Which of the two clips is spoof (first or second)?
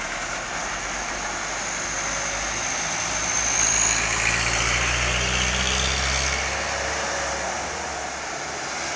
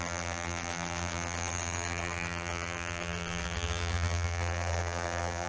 second